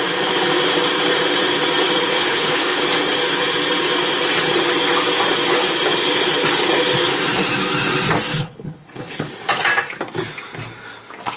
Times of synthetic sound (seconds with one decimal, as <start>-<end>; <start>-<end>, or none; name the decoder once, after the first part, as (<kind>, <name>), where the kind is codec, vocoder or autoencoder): 2.1-2.8 (codec, HILCodec); 8.3-9.3